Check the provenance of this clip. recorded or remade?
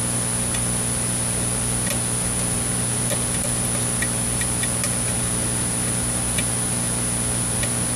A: recorded